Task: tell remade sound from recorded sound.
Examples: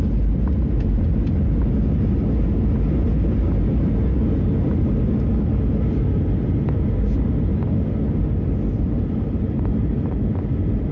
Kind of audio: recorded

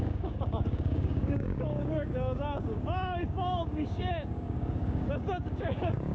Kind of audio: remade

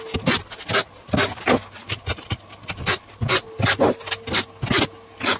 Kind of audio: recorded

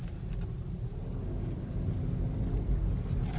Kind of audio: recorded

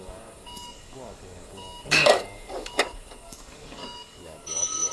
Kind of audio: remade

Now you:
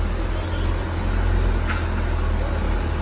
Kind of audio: recorded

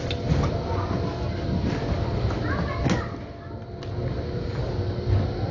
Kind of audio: recorded